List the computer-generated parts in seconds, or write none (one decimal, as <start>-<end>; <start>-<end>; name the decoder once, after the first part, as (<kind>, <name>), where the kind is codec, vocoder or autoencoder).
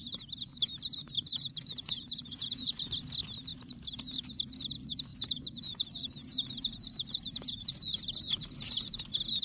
1.3-2.8 (vocoder, BigVGAN v2); 3.5-4.2; 5.1-9.0